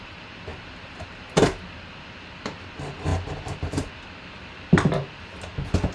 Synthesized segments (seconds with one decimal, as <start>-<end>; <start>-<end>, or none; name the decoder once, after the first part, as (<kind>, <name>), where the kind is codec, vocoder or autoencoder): 3.1-3.9 (vocoder, BigVGAN v2)